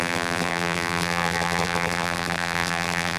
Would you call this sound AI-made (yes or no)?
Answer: yes